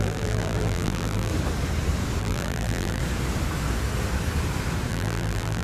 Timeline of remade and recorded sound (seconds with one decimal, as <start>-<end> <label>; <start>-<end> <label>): 0.0-1.3 remade; 1.3-2.2 recorded; 2.2-3.0 remade; 3.0-4.9 recorded; 4.9-5.6 remade